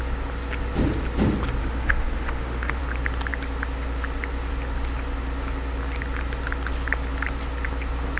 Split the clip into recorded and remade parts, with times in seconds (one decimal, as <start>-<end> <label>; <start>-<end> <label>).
0.0-1.6 recorded; 1.6-2.8 remade; 2.8-8.2 recorded